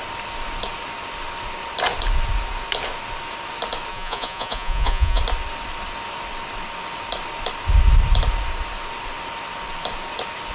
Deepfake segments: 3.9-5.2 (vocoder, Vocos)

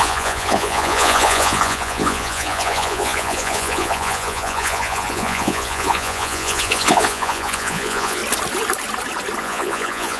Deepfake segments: 0.0-8.2 (vocoder, Vocos); 9.4-10.2

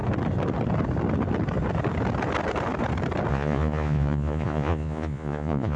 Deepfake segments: 3.3-5.8 (vocoder, Vocos)

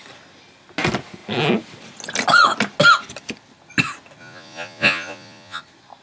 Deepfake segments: 4.2-5.6 (vocoder, Vocos)

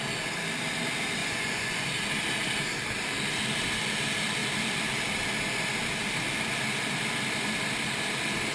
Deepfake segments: 1.2-1.9 (vocoder, Vocos)

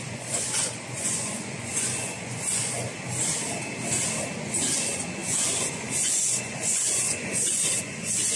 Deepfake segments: 0.0-2.9 (vocoder, Vocos); 4.4-8.4

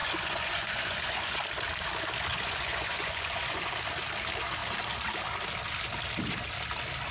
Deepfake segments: 0.0-1.4 (vocoder, Vocos); 2.3-3.7